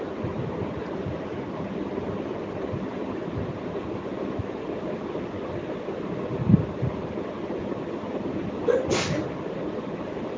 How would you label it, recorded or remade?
recorded